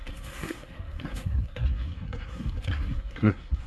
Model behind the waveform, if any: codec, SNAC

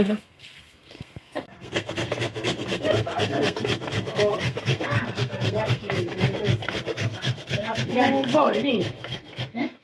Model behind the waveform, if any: codec, SNAC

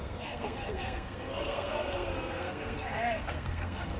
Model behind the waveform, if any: codec, SNAC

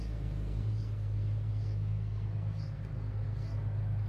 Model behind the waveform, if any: codec, SNAC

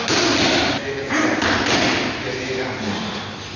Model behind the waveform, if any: none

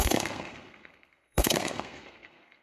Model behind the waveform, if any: codec, SNAC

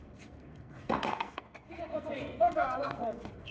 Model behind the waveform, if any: codec, SNAC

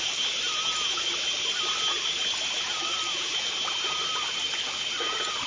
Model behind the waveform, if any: none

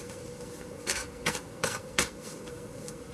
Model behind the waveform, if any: codec, SNAC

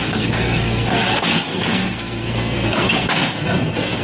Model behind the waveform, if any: codec, SNAC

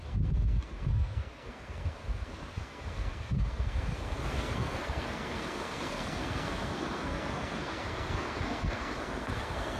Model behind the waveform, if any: codec, SNAC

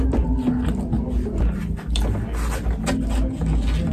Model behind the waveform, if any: none